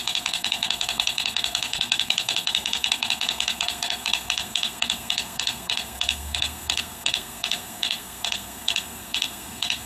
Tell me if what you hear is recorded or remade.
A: remade